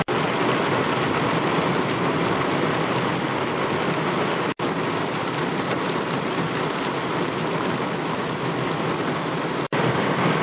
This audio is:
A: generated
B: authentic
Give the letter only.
B